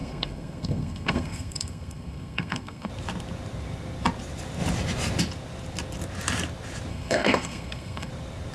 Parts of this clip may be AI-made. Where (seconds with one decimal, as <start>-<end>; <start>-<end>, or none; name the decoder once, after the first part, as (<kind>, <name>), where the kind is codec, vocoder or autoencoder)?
0.0-2.9 (codec, SNAC); 6.9-8.1